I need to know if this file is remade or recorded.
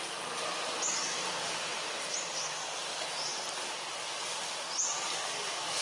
recorded